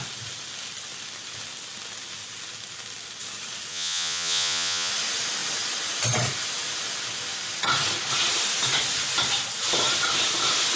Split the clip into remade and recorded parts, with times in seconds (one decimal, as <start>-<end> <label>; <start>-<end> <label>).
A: 0.0-3.7 recorded; 3.7-4.9 remade; 4.9-10.8 recorded